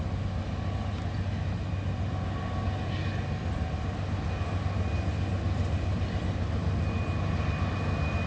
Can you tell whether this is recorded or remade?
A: recorded